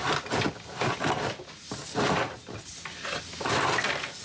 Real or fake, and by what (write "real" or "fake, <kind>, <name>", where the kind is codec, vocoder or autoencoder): real